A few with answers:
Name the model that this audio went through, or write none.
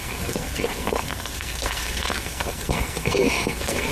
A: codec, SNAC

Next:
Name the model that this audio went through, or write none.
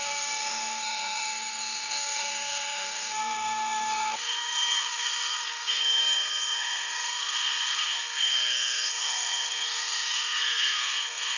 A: codec, SNAC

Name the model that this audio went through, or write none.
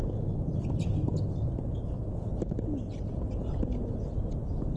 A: none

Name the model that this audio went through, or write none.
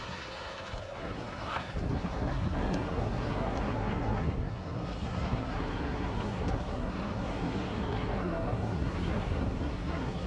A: codec, SNAC